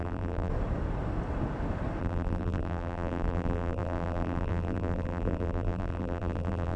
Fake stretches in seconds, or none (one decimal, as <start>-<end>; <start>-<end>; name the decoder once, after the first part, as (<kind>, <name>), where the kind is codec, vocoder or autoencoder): 0.0-0.5 (vocoder, BigVGAN v2); 2.0-6.8